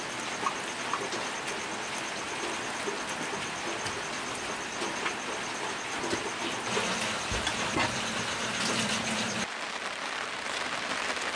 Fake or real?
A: real